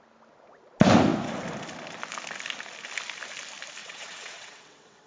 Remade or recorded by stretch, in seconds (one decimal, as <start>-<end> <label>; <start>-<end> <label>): 0.0-3.8 recorded; 3.8-5.1 remade